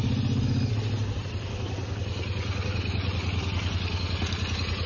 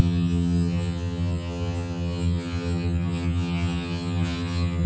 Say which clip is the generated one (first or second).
second